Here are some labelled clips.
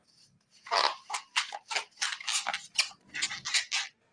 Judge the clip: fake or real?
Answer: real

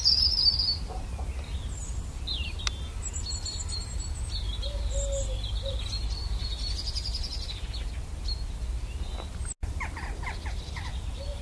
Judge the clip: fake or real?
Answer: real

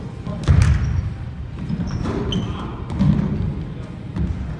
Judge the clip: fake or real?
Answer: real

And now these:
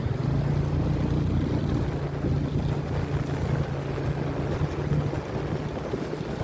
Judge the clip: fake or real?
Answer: real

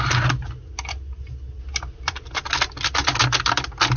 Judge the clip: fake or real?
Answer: real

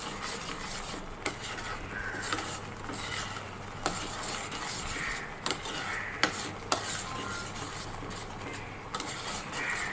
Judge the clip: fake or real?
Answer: real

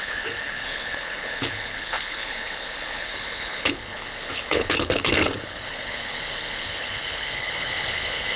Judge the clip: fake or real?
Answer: fake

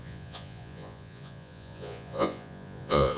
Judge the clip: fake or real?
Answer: fake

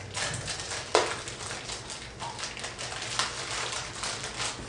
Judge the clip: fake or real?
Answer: real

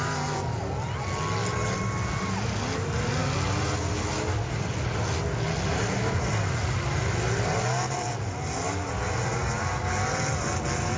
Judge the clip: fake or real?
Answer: real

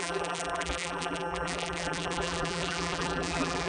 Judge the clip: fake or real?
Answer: fake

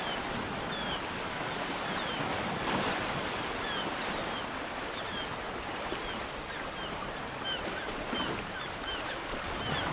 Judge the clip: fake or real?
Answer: fake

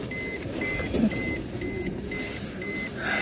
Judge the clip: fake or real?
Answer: real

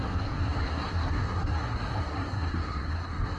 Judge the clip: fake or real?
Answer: fake